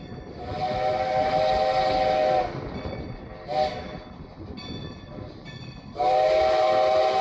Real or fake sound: real